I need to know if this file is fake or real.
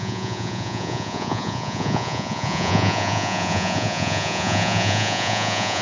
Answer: fake